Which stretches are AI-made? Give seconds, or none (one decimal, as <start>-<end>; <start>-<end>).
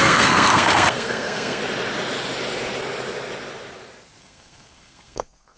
0.0-1.6; 4.2-5.6